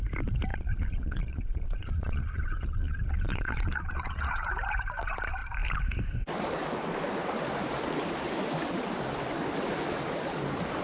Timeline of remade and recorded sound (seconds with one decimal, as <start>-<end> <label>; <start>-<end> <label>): 0.0-0.5 recorded; 0.5-4.5 remade; 4.5-10.8 recorded